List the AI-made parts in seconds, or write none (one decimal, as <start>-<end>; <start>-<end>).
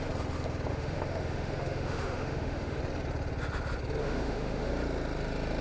0.7-2.8; 4.0-4.7